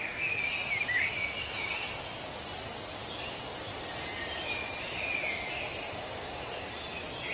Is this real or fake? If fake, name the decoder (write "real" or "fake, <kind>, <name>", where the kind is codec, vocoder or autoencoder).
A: real